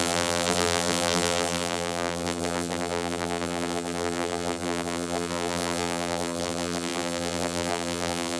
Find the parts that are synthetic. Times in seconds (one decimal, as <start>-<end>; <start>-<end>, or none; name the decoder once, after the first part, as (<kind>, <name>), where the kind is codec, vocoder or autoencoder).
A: 0.0-8.4 (vocoder, BigVGAN v2)